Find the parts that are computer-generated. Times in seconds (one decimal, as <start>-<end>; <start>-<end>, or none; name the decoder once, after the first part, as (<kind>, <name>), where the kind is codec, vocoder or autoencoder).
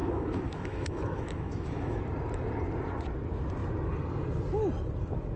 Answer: 0.0-2.0 (autoencoder, DAC-VAE)